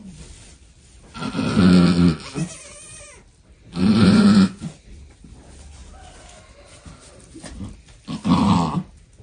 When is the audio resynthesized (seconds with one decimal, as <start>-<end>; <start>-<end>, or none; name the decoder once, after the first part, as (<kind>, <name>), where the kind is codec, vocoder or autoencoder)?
3.8-4.6 (vocoder, Vocos)